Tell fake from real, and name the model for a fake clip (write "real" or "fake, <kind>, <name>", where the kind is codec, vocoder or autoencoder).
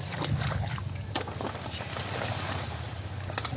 real